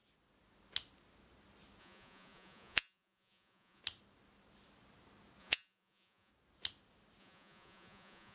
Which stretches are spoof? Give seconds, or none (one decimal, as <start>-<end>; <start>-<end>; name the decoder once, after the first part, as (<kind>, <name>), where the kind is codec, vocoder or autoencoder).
1.8-3.8 (vocoder, Vocos); 5.4-6.3; 7.2-8.3